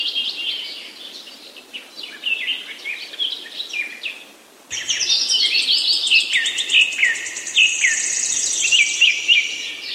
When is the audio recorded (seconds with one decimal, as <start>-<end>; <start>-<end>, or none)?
0.0-9.9